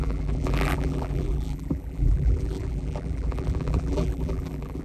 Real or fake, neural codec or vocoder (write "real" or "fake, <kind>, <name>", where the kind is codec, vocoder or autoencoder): fake, vocoder, BigVGAN v2